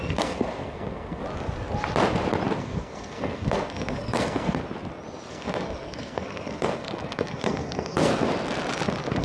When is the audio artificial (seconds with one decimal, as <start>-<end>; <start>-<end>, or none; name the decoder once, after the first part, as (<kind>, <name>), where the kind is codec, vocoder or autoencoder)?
0.0-1.2 (codec, SNAC); 2.6-4.6; 5.3-8.1